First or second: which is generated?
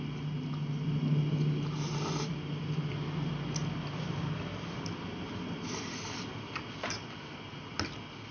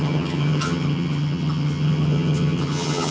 second